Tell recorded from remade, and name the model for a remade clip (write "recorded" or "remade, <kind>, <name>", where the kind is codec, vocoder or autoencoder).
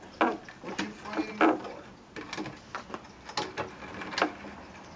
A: recorded